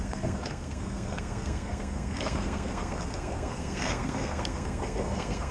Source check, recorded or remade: remade